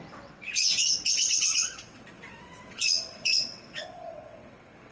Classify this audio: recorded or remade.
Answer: remade